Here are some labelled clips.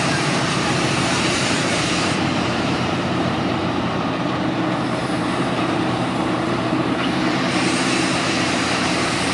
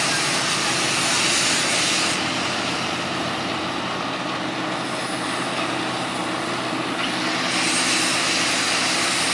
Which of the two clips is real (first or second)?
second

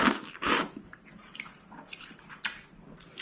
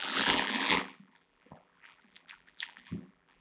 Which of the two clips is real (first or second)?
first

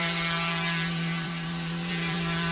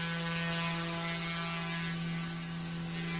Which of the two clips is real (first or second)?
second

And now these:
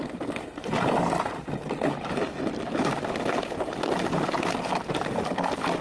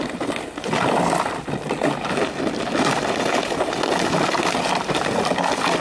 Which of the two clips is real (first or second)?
second